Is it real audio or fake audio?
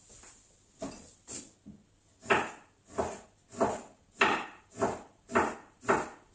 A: real